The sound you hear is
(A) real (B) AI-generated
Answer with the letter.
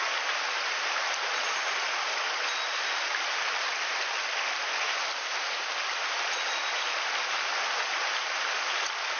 A